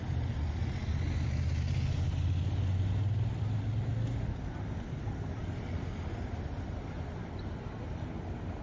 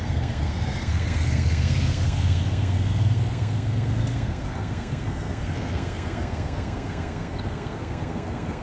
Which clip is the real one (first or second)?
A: first